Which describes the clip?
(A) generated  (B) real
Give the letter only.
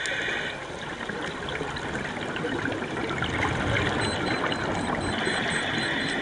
B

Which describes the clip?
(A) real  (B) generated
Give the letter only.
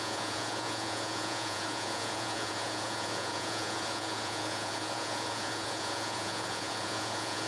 B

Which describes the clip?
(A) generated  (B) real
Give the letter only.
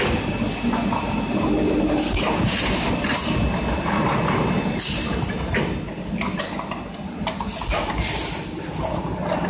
B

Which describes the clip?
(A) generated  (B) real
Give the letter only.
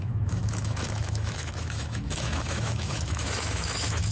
A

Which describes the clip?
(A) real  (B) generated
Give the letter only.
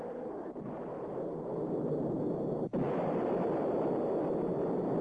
A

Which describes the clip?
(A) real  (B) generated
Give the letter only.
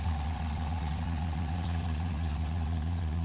B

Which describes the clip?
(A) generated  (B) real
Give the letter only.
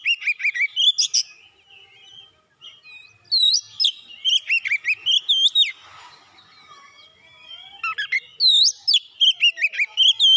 B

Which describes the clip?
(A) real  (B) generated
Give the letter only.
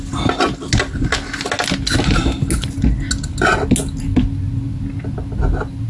A